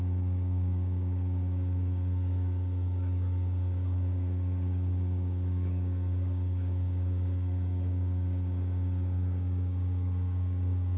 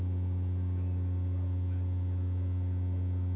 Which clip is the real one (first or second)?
second